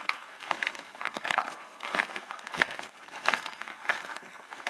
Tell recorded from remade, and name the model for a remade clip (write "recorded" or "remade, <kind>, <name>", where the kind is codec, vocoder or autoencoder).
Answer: remade, codec, SNAC